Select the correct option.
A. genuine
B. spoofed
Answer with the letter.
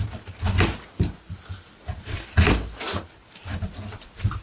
A